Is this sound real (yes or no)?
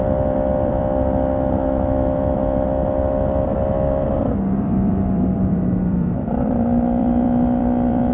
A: no